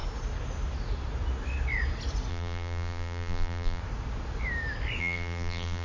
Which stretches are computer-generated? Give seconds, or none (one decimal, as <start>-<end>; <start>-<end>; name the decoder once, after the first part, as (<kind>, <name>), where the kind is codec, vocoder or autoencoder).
2.3-3.8 (vocoder, BigVGAN v2); 5.0-5.8